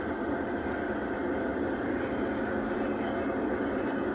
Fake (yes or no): no